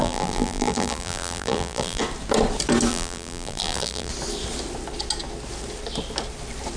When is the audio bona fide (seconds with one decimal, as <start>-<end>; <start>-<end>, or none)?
2.0-2.9; 4.1-6.8